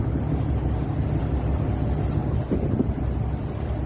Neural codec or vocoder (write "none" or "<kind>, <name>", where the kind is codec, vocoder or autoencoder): none